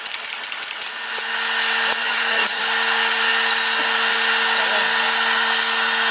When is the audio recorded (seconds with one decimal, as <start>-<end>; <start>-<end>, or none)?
0.0-2.0; 2.6-6.1